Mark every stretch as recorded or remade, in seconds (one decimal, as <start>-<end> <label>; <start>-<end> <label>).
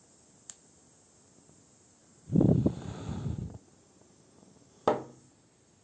0.0-2.0 recorded; 2.0-2.9 remade; 2.9-5.8 recorded